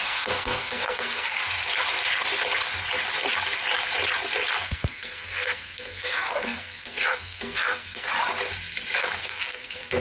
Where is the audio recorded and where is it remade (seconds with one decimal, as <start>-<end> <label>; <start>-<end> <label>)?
0.0-1.4 remade; 1.4-4.6 recorded; 4.6-8.1 remade; 8.1-9.2 recorded; 9.2-10.0 remade